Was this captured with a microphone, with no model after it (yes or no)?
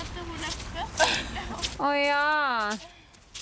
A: yes